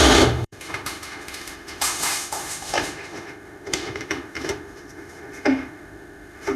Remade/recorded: remade